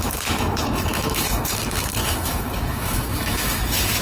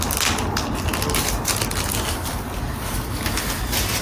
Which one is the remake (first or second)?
first